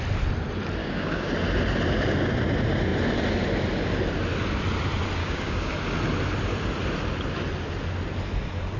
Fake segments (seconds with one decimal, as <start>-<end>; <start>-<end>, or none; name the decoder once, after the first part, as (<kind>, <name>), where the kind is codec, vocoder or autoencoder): 0.8-1.3 (codec, DAC); 5.2-5.7